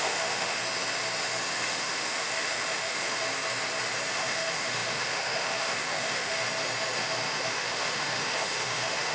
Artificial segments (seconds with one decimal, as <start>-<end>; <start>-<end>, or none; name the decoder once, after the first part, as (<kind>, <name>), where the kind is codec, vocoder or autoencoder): 0.0-0.6 (autoencoder, DAC-VAE); 1.5-3.2; 4.1-6.4; 7.4-9.1